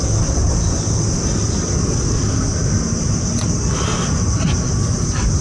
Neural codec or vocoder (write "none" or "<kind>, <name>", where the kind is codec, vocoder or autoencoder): none